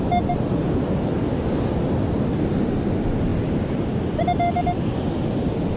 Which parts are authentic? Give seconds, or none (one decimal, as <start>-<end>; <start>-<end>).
0.0-5.8